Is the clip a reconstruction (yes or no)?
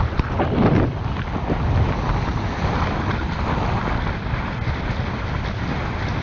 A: no